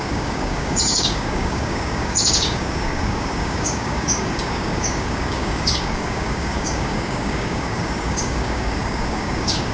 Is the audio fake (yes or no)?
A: yes